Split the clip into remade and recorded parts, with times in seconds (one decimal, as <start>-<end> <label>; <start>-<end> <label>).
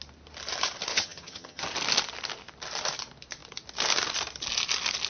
0.0-0.9 recorded; 0.9-1.6 remade; 1.6-5.1 recorded